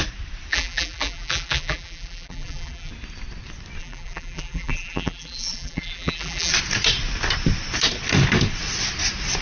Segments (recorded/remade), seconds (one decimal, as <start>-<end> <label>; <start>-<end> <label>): 0.0-0.5 recorded; 0.5-2.9 remade; 2.9-3.8 recorded; 3.8-6.5 remade; 6.5-9.4 recorded